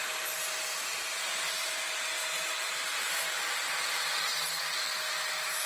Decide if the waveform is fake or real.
real